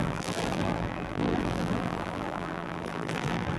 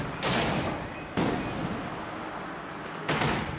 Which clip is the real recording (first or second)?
second